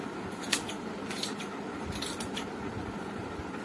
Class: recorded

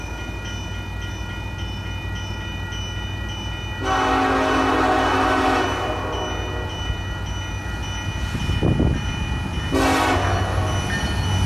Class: recorded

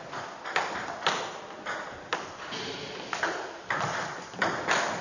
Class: recorded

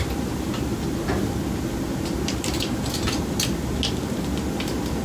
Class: recorded